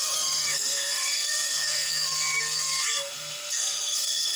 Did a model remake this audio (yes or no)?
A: yes